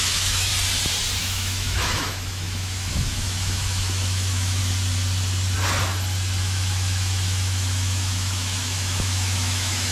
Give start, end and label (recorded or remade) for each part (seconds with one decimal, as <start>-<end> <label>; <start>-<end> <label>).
0.0-0.5 remade; 0.5-1.2 recorded; 1.2-4.6 remade; 4.6-6.4 recorded; 6.4-9.9 remade